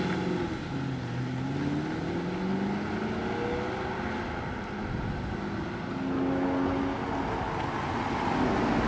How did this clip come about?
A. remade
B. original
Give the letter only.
B